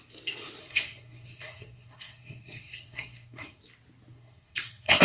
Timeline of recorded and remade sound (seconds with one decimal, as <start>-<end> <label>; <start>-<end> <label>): 0.0-0.6 recorded; 0.6-3.6 remade; 3.6-4.1 recorded; 4.1-5.0 remade